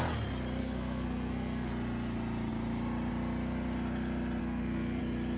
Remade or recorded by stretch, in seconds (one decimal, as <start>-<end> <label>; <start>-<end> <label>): 0.0-0.6 recorded; 0.6-1.7 remade; 1.7-4.4 recorded; 4.4-5.0 remade; 5.0-5.4 recorded